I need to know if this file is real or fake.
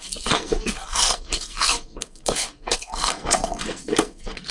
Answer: fake